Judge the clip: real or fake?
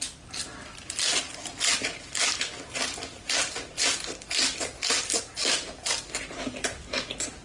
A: real